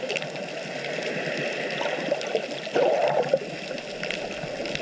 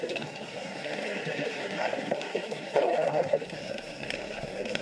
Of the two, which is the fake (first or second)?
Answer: second